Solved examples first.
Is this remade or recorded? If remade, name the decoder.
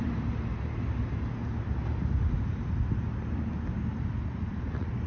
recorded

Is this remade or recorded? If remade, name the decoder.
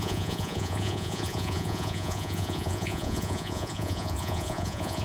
remade, vocoder, Vocos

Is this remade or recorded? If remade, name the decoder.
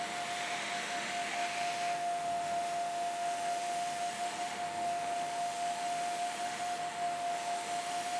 remade, autoencoder, DAC-VAE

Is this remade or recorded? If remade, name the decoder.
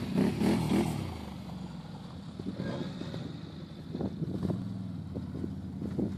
recorded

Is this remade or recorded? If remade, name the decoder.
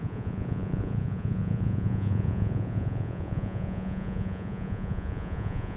remade, vocoder, Vocos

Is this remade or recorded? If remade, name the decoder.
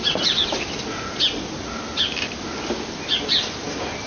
recorded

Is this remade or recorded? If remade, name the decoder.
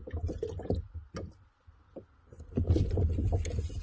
recorded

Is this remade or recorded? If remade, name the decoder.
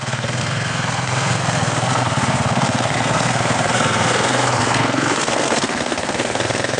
remade, codec, SNAC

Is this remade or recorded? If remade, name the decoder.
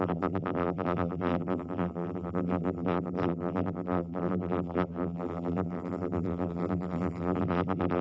remade, vocoder, BigVGAN v2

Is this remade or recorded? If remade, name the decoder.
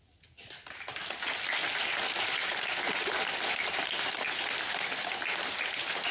recorded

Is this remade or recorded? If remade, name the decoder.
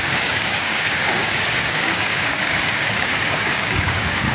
remade, codec, DAC